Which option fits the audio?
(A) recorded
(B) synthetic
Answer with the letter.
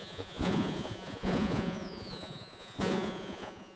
B